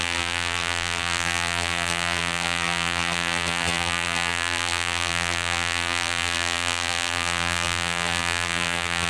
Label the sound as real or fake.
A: fake